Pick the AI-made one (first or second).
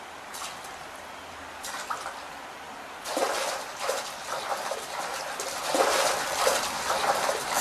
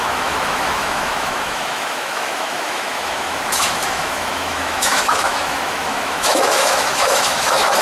second